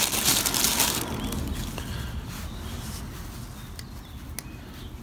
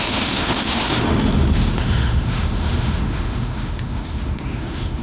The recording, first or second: first